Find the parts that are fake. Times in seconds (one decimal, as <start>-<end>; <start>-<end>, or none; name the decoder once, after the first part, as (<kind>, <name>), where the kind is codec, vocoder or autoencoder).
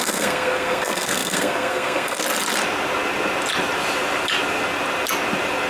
0.0-2.2 (codec, SNAC)